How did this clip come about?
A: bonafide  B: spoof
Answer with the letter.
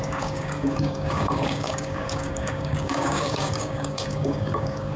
B